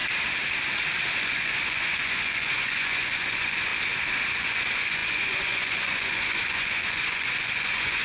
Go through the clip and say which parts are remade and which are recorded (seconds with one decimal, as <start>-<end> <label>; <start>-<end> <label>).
0.0-1.2 recorded; 1.2-3.7 remade; 3.7-4.3 recorded; 4.3-8.0 remade